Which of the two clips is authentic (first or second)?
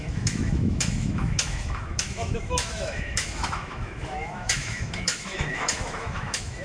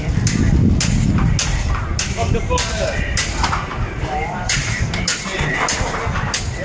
second